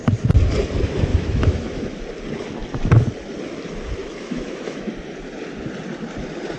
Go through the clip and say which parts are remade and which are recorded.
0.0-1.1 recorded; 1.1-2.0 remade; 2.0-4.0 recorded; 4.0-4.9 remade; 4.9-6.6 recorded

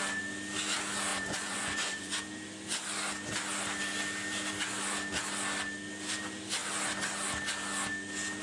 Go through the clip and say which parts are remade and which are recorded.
0.0-1.1 recorded; 1.1-2.2 remade; 2.2-8.4 recorded

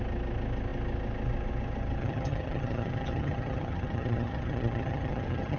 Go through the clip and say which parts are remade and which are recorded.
0.0-2.0 recorded; 2.0-5.6 remade

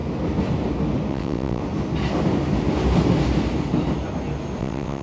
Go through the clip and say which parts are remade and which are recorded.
0.0-1.1 recorded; 1.1-1.6 remade; 1.6-4.6 recorded; 4.6-5.0 remade

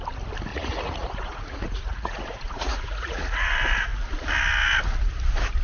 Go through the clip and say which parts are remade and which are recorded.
0.0-0.5 recorded; 0.5-3.5 remade; 3.5-5.6 recorded